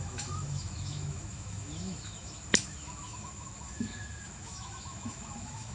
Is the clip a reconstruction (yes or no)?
yes